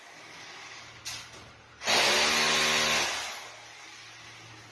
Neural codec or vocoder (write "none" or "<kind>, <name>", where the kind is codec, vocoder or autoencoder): none